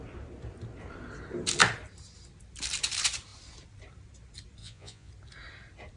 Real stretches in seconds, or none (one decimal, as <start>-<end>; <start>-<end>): 0.0-4.6; 5.1-6.0